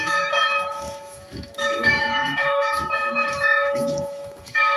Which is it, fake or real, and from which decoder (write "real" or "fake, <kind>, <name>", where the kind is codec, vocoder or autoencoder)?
fake, autoencoder, DAC-VAE